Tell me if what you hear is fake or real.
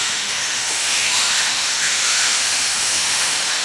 fake